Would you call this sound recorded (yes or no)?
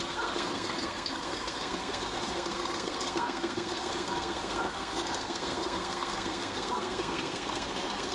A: no